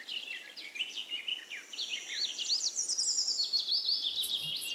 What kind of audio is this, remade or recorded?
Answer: recorded